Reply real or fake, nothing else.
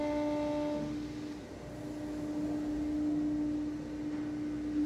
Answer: real